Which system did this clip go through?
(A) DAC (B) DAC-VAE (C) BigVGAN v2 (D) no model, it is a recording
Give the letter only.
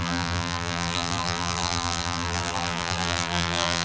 C